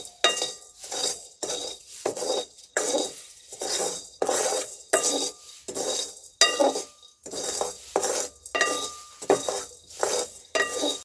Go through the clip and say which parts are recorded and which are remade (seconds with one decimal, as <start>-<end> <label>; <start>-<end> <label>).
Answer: 0.0-1.0 recorded; 1.0-4.9 remade; 4.9-11.0 recorded